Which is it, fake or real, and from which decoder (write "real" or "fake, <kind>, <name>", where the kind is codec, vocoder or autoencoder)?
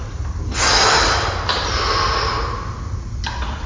real